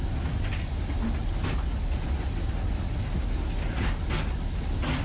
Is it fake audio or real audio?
real